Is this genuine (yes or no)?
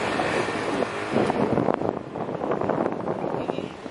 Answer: yes